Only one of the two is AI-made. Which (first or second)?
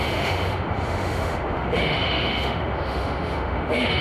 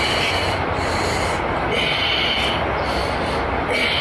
first